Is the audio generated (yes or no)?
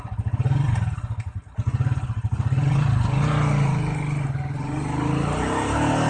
no